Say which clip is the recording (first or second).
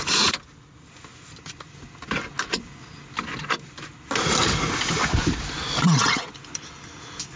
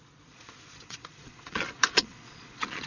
first